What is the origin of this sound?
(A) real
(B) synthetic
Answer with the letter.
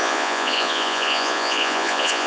B